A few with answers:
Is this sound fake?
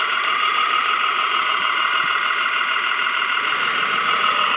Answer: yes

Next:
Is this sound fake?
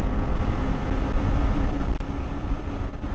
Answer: no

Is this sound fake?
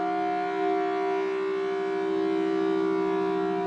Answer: no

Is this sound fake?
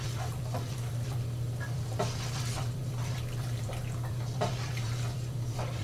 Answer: yes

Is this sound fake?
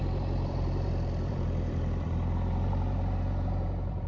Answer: yes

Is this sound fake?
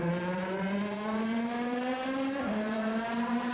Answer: yes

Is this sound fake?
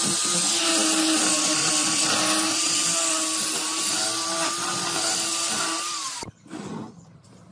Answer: no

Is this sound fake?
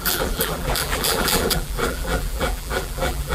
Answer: yes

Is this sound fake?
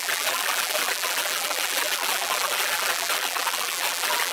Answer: yes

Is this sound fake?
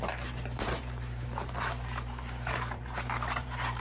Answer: yes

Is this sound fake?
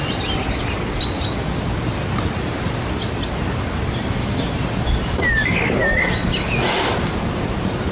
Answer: no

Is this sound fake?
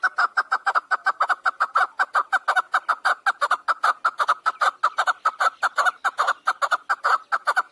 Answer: no